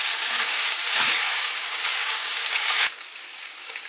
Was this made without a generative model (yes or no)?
no